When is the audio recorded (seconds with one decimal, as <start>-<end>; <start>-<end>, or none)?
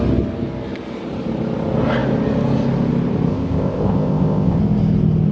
0.0-3.3; 4.6-5.3